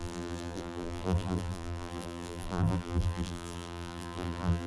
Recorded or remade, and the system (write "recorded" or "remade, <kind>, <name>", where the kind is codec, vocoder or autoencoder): remade, vocoder, BigVGAN v2